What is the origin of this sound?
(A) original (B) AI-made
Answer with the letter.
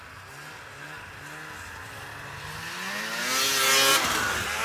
A